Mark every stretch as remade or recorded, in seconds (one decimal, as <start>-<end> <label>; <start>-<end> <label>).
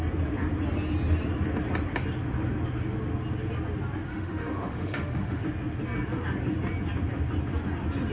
0.0-4.1 recorded; 4.1-5.4 remade; 5.4-8.1 recorded